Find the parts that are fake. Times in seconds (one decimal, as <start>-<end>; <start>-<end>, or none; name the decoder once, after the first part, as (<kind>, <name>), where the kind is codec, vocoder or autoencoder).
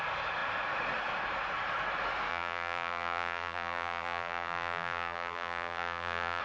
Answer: 2.3-6.4 (vocoder, BigVGAN v2)